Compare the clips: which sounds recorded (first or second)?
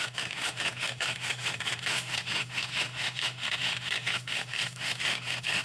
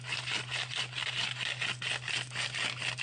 second